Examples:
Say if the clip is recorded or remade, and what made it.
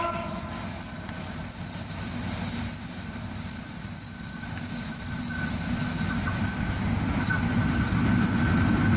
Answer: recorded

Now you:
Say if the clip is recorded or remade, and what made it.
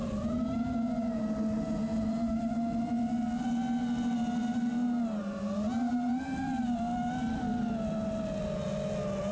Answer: recorded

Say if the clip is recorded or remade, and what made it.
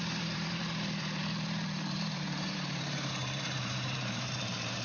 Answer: remade, vocoder, BigVGAN v2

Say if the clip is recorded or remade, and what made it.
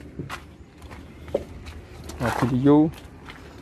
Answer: recorded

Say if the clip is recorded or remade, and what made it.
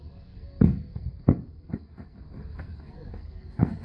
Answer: remade, codec, SNAC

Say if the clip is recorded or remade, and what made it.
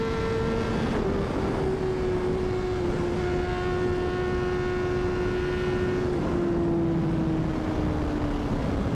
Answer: recorded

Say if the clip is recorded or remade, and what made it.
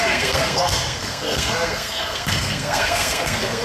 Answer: remade, codec, SNAC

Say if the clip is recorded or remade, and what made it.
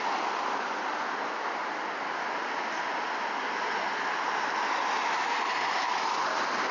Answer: recorded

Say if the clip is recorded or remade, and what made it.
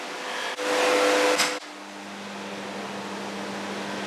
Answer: recorded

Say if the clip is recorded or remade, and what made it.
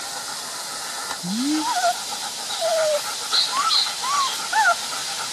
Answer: recorded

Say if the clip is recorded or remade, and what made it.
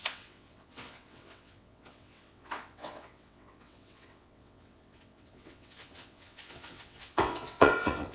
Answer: remade, vocoder, WaveNeXt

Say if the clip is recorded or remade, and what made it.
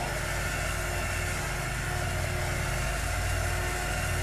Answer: recorded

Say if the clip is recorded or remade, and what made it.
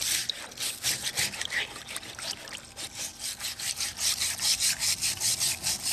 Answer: remade, vocoder, BigVGAN v2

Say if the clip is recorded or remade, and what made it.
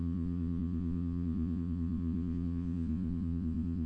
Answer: remade, vocoder, Vocos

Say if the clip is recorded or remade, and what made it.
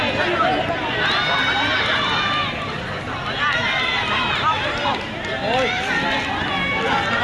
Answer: recorded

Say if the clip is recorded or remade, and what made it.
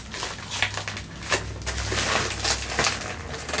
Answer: recorded